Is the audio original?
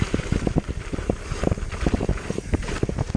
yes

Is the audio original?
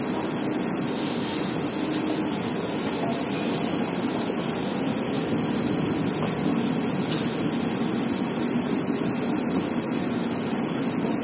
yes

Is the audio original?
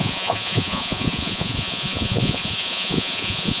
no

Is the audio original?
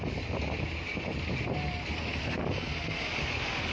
yes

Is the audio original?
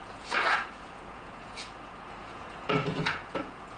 no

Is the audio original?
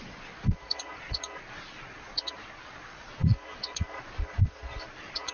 no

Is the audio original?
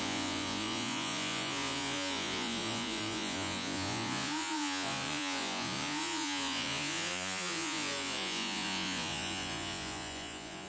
no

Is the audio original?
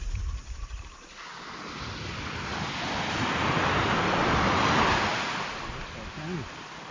yes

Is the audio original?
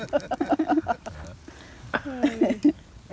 yes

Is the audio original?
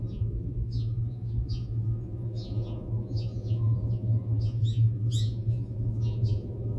no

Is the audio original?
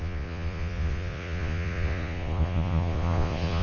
no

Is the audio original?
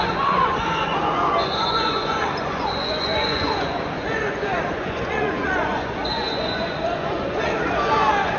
no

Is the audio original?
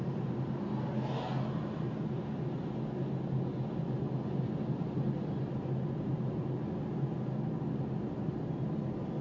yes